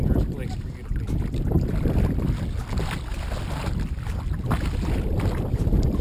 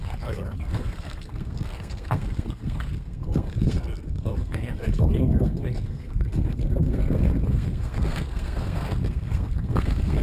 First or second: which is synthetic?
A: second